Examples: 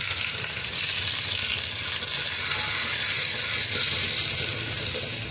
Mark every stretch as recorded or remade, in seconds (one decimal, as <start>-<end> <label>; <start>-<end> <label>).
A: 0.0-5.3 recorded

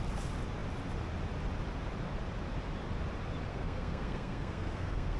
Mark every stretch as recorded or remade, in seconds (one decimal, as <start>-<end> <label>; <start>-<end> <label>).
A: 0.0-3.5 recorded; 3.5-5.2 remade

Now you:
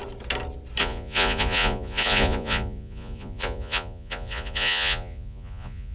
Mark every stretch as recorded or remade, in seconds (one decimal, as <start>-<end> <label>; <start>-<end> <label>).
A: 0.0-0.8 recorded; 0.8-5.9 remade

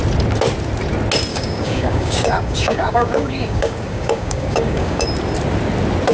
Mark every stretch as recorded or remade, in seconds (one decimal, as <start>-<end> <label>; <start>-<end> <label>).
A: 0.0-1.3 recorded; 1.3-5.0 remade; 5.0-6.1 recorded

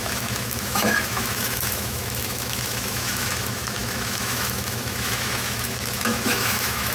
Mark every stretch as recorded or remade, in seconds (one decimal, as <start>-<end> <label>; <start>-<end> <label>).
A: 0.0-6.9 remade